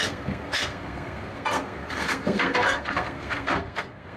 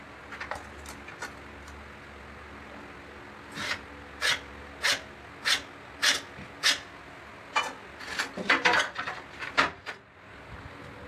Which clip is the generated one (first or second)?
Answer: first